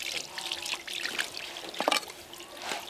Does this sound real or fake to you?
real